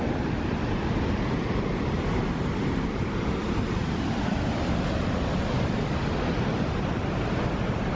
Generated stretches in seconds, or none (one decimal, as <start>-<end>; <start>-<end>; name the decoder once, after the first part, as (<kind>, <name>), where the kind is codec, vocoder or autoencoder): none